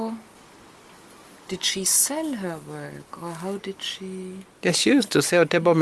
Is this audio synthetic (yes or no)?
no